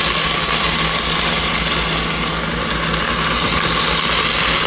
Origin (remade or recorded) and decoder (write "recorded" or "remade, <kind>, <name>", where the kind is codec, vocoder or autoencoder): recorded